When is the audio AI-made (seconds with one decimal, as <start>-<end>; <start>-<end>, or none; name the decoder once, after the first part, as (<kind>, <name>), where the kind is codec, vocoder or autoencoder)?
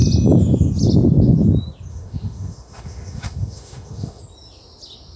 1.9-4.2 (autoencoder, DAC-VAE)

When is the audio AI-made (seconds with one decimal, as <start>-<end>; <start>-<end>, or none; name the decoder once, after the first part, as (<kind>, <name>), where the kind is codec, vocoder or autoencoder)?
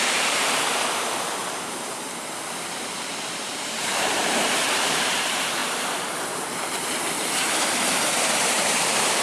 0.0-9.2 (vocoder, BigVGAN v2)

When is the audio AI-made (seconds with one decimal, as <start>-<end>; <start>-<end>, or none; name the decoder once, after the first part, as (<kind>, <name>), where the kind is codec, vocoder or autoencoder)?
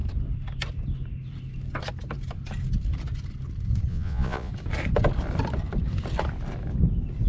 3.9-4.5 (vocoder, Vocos)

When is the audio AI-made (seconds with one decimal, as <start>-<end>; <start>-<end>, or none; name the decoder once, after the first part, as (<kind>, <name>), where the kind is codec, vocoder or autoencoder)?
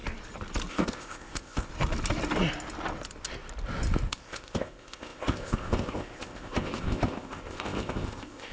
0.7-1.7 (codec, ZipCodec); 4.1-8.5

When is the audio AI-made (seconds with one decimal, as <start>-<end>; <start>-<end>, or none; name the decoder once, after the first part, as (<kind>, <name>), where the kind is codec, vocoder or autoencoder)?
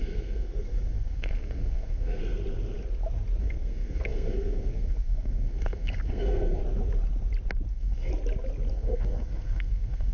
0.0-2.2 (codec, SNAC); 3.4-6.6; 7.7-8.1; 8.7-10.1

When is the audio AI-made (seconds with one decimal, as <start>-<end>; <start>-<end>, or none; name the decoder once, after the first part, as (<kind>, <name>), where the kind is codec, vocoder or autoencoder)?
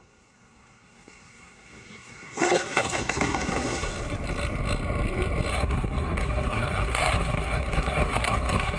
0.0-3.9 (codec, SNAC); 5.5-8.8